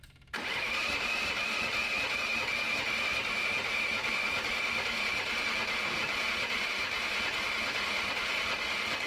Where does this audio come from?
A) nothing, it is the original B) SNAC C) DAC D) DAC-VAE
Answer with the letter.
A